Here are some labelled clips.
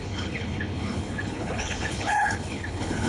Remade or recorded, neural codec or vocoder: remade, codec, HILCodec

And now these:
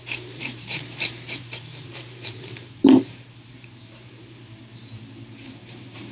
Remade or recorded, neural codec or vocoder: remade, vocoder, BigVGAN v2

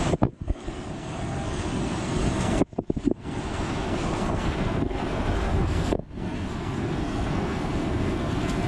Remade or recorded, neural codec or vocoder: remade, codec, SNAC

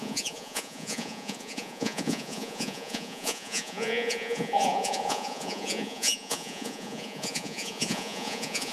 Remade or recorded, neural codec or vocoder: remade, vocoder, Vocos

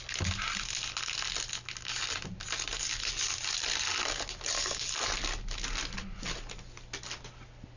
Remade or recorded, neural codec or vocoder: recorded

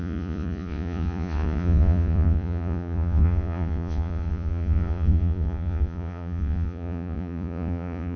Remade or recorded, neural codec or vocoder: remade, vocoder, Vocos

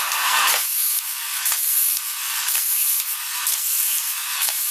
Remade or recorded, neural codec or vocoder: remade, codec, SNAC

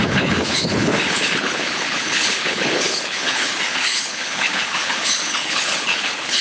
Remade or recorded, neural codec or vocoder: remade, codec, HILCodec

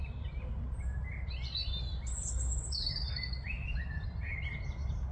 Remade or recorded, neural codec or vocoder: recorded